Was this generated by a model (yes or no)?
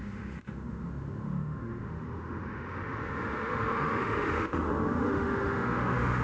yes